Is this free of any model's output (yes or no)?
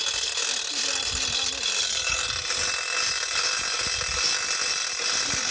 yes